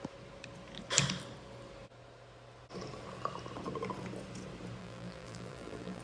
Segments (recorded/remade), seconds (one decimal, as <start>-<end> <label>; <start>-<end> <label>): 0.0-4.8 recorded; 4.8-6.0 remade